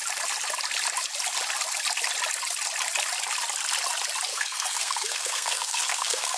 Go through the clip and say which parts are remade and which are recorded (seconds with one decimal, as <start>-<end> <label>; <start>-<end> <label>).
0.0-4.3 recorded; 4.3-6.4 remade